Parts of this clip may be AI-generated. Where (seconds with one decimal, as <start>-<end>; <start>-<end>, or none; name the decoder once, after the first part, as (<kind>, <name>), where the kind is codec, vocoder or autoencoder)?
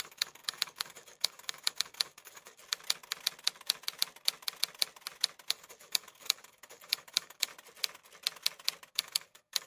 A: 0.0-2.6 (codec, DAC); 5.5-7.5; 8.9-9.7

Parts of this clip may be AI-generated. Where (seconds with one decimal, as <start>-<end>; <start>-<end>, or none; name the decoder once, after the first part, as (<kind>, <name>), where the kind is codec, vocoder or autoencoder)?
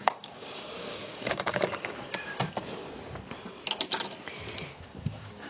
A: 0.0-2.8 (codec, DAC); 4.8-5.5